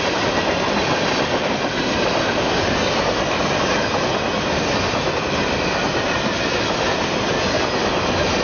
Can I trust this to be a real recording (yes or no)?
yes